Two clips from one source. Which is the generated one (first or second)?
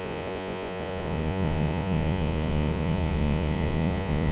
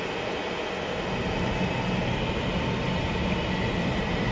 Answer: first